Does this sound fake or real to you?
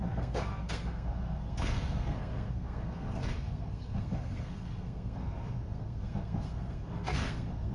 fake